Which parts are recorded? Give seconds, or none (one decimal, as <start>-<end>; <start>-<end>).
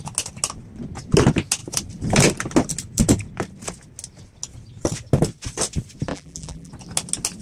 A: 0.0-6.1; 6.7-7.4